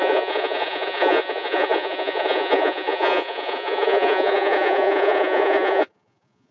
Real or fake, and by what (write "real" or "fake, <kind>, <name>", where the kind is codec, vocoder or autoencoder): fake, vocoder, Vocos